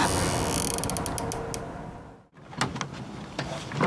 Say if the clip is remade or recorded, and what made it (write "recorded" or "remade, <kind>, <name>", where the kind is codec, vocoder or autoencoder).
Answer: recorded